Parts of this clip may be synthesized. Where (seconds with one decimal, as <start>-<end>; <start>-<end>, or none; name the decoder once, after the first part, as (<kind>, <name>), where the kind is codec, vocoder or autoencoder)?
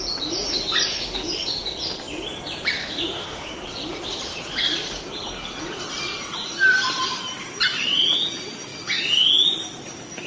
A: 2.8-3.6 (autoencoder, DAC-VAE)